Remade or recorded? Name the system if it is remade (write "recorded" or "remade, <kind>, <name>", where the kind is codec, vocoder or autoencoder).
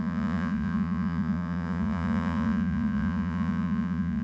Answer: remade, vocoder, Vocos